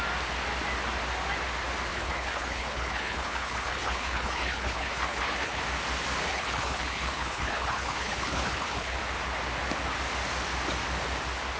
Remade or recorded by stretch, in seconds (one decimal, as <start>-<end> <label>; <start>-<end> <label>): 0.0-1.9 recorded; 1.9-5.6 remade; 5.6-6.3 recorded; 6.3-9.0 remade; 9.0-11.6 recorded